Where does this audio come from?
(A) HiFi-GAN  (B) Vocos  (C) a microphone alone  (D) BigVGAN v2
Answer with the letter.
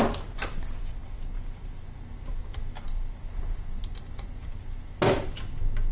C